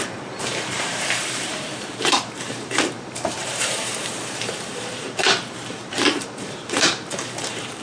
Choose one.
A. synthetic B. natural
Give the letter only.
A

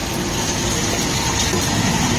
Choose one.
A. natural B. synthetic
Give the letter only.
A